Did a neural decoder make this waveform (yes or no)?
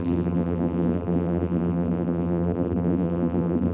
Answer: yes